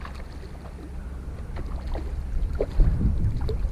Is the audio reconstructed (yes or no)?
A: no